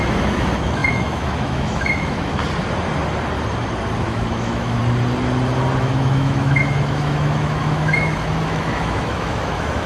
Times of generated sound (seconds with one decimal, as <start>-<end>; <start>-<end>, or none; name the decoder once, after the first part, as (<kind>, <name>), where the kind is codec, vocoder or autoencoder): 0.0-2.4 (autoencoder, DAC-VAE); 4.0-4.8; 5.8-9.9